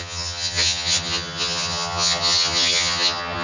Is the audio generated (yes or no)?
yes